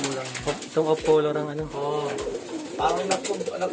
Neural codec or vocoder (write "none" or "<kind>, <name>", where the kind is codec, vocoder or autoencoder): none